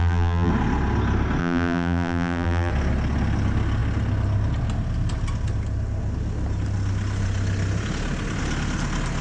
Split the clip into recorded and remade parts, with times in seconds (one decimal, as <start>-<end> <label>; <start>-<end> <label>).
0.0-0.5 remade; 0.5-1.4 recorded; 1.4-2.7 remade; 2.7-9.2 recorded